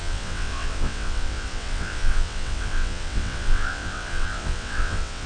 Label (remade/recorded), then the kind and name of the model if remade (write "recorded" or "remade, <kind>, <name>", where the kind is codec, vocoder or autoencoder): remade, vocoder, WaveNeXt